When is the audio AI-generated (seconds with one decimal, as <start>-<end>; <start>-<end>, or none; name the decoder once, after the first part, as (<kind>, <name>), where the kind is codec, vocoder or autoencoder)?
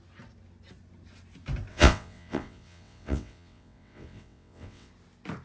1.7-4.9 (vocoder, WaveNeXt)